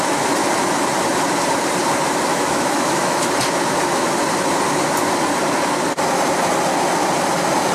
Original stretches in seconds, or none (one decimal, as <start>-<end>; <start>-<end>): 0.0-2.3; 3.3-7.7